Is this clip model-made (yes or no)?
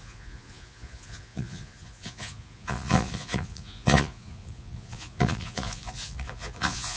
yes